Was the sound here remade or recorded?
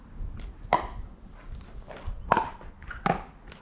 recorded